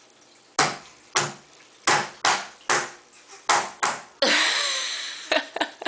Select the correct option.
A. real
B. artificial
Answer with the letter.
A